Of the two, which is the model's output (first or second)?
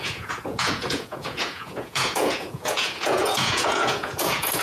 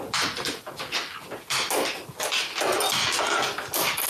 first